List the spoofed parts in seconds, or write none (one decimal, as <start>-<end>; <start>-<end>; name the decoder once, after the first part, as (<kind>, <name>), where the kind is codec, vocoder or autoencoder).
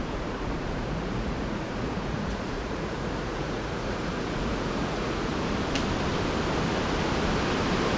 0.0-5.3 (vocoder, Vocos)